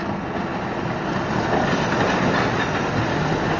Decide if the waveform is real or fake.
real